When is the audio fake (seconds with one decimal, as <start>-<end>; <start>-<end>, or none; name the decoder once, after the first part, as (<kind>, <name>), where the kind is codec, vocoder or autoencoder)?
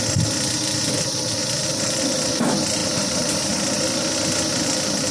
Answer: 1.4-2.0 (vocoder, BigVGAN v2); 2.8-3.6